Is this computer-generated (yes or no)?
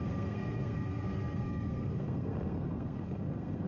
yes